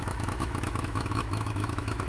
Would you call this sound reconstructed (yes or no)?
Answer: yes